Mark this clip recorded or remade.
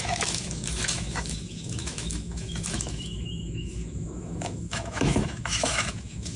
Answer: remade